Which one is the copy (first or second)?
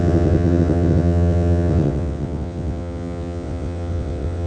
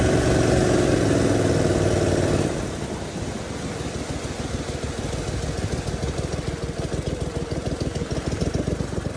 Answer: first